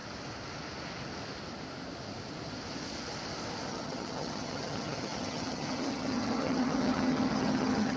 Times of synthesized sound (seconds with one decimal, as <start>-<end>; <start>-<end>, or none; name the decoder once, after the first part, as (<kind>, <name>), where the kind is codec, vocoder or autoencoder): 3.7-8.0 (vocoder, HiFi-GAN)